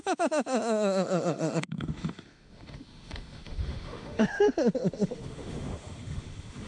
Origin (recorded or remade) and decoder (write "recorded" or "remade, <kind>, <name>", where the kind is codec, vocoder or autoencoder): remade, autoencoder, DAC-VAE